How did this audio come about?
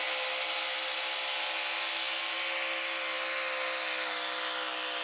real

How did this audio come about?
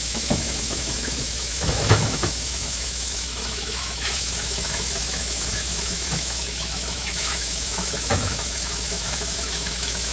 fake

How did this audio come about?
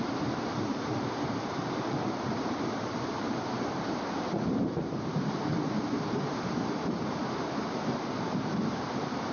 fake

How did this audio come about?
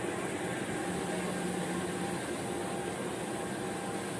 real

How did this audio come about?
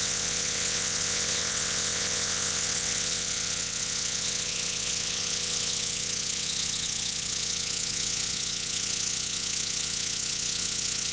fake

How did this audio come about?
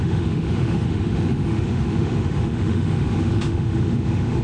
fake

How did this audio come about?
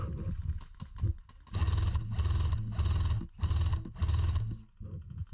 real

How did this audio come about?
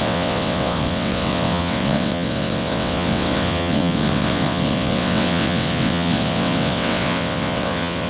fake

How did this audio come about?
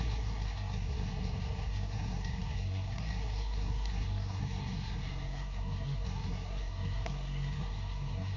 fake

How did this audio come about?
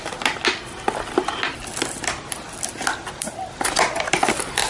real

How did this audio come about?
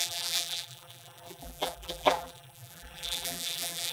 fake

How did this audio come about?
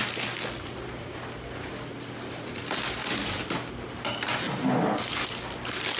real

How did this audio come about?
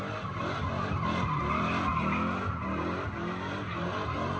real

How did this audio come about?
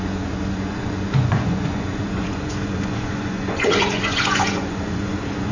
fake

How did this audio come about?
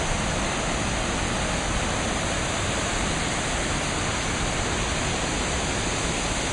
real